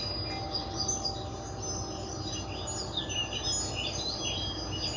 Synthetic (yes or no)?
no